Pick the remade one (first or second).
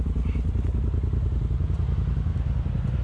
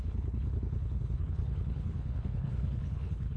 second